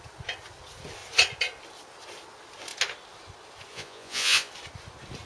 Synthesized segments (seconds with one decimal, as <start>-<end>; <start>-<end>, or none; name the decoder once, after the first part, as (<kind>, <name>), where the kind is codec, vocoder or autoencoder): 3.7-4.5 (vocoder, Vocos)